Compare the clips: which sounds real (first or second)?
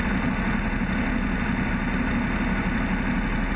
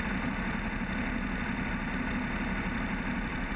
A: first